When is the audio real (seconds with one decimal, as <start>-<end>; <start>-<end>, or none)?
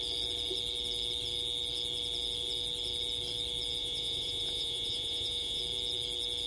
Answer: 0.0-3.8; 5.6-6.5